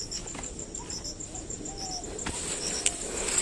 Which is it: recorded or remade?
recorded